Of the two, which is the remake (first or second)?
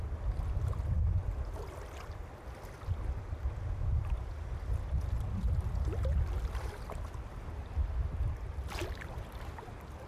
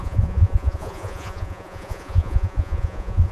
second